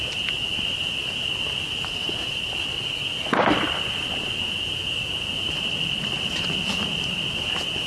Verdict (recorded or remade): recorded